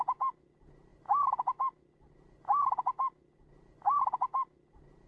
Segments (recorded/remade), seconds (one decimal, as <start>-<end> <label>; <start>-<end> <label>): 0.0-5.1 recorded